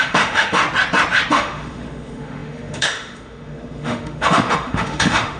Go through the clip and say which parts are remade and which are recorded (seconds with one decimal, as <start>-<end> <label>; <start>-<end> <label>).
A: 0.0-0.6 remade; 0.6-1.3 recorded; 1.3-5.4 remade